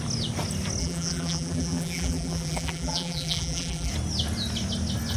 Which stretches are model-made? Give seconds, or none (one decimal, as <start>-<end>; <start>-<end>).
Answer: 0.8-3.9